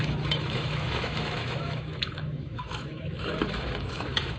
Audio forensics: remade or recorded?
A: remade